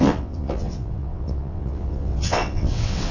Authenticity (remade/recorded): remade